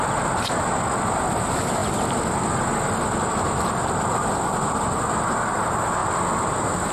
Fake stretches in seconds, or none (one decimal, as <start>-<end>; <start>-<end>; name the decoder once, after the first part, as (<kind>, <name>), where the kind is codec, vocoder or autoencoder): none